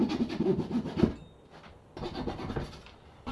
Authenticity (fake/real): fake